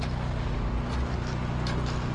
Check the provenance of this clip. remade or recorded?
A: recorded